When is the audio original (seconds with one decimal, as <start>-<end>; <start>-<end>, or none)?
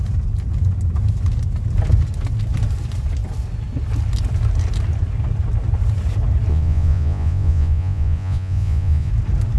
0.0-6.5; 9.1-9.6